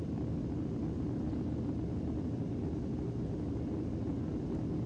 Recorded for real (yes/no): yes